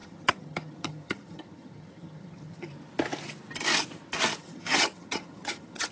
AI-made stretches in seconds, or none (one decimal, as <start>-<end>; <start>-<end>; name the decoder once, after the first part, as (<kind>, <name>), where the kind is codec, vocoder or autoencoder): 0.0-2.7 (vocoder, HiFi-GAN); 4.4-5.9

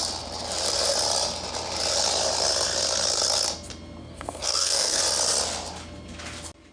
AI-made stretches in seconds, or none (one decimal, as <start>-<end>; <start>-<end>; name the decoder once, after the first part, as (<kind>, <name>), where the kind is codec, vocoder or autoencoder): 4.0-5.0 (codec, SNAC)

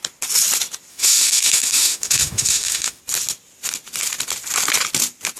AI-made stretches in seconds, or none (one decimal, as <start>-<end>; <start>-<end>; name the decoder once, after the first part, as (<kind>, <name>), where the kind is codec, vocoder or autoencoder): 0.9-3.0 (autoencoder, DAC-VAE)